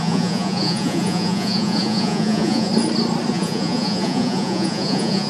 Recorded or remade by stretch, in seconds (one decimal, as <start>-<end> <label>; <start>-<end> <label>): 0.0-2.7 remade; 2.7-3.3 recorded; 3.3-5.3 remade